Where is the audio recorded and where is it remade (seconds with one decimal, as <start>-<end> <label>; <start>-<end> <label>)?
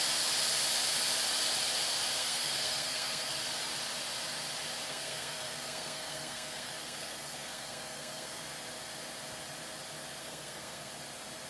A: 0.0-2.2 recorded; 2.2-3.4 remade; 3.4-4.9 recorded; 4.9-8.4 remade; 8.4-10.2 recorded; 10.2-10.9 remade; 10.9-11.5 recorded